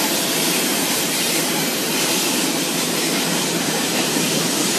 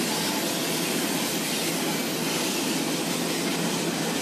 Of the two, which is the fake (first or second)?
first